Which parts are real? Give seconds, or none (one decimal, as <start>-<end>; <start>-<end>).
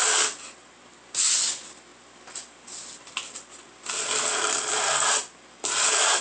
0.0-6.2